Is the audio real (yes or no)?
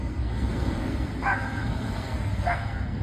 no